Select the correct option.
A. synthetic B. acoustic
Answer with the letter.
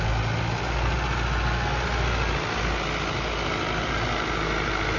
B